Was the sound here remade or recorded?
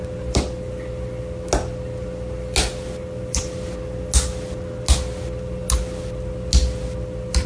recorded